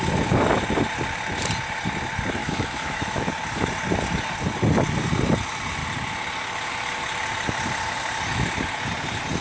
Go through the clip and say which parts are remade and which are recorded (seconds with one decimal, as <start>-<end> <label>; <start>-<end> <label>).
0.0-2.4 recorded; 2.4-3.3 remade; 3.3-9.4 recorded

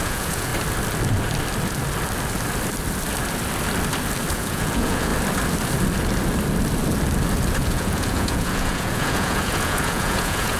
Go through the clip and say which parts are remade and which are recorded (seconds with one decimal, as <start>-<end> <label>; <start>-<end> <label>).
0.0-0.5 remade; 0.5-4.3 recorded; 4.3-5.1 remade; 5.1-7.6 recorded; 7.6-10.6 remade

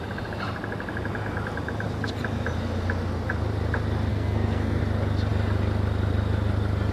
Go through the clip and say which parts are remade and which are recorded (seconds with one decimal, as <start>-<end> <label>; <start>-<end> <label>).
0.0-4.1 recorded; 4.1-4.8 remade; 4.8-6.9 recorded

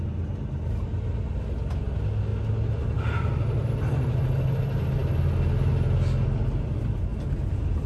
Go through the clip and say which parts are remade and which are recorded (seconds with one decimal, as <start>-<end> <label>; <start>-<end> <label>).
0.0-7.9 recorded

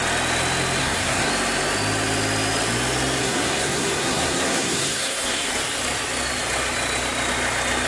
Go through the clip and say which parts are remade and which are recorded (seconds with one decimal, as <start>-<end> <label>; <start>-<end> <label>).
0.0-0.8 recorded; 0.8-1.3 remade; 1.3-3.2 recorded; 3.2-5.5 remade; 5.5-7.9 recorded

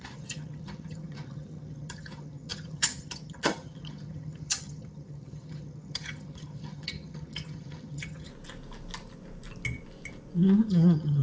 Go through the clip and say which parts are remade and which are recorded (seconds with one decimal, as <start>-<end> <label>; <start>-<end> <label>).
0.0-8.3 remade; 8.3-10.7 recorded; 10.7-11.2 remade

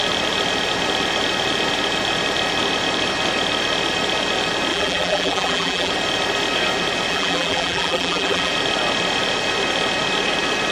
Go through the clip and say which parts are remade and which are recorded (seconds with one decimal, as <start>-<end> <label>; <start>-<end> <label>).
0.0-4.7 recorded; 4.7-5.9 remade; 5.9-7.1 recorded; 7.1-8.5 remade; 8.5-10.7 recorded

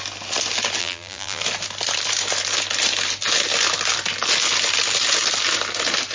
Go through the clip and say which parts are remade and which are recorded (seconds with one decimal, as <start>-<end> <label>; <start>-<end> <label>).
0.0-0.8 recorded; 0.8-1.4 remade; 1.4-6.1 recorded